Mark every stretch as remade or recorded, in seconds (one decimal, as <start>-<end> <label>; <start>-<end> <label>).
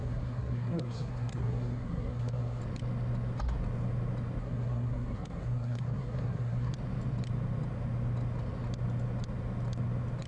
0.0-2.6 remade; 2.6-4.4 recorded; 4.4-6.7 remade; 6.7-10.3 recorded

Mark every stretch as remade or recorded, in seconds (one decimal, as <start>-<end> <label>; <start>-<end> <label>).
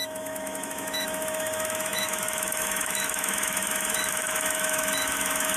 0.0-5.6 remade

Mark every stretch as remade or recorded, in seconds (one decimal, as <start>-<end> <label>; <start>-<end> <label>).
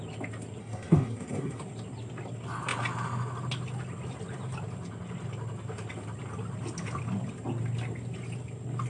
0.0-0.6 recorded; 0.6-1.6 remade; 1.6-8.9 recorded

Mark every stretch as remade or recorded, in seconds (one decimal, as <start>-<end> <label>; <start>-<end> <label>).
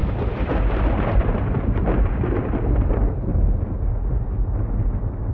0.0-3.3 remade; 3.3-5.3 recorded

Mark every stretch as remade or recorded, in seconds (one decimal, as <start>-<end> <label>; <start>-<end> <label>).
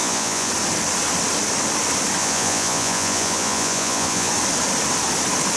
0.0-0.5 remade; 0.5-2.2 recorded; 2.2-4.3 remade; 4.3-5.6 recorded